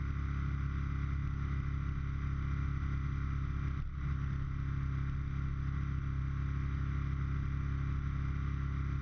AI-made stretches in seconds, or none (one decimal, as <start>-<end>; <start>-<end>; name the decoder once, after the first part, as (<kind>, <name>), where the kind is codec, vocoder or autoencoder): none